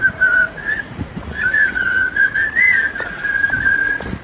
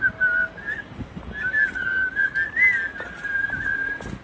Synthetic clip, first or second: first